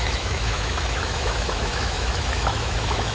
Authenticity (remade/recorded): remade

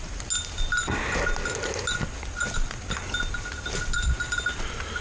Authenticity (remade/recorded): recorded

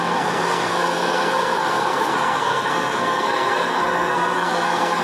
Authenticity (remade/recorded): remade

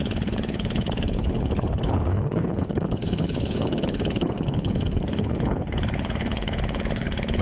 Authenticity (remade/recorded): remade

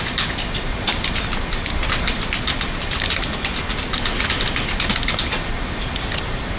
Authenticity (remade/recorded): recorded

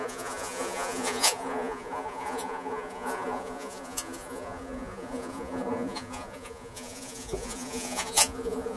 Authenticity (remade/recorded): remade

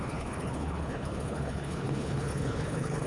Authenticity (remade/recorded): remade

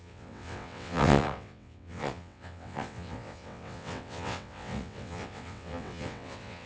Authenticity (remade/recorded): remade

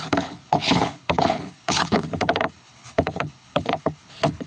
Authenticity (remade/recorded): remade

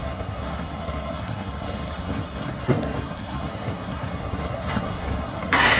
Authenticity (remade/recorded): remade